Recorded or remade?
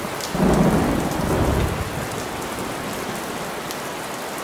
recorded